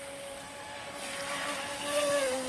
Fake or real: real